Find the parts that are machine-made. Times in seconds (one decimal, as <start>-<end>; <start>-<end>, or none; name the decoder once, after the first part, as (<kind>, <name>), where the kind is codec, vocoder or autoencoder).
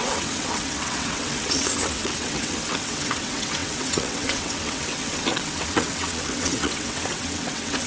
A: 0.0-7.9 (vocoder, WaveNeXt)